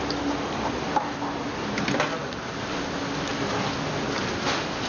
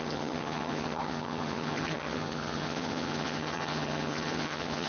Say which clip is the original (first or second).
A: first